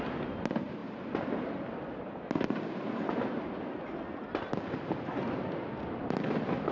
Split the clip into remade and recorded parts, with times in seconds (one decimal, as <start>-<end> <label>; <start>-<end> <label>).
0.0-6.7 recorded